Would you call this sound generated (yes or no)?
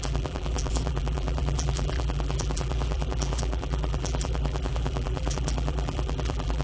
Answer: yes